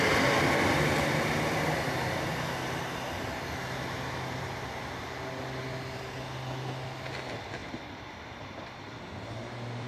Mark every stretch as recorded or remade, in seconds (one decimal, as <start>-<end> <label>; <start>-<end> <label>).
0.0-7.6 recorded; 7.6-9.9 remade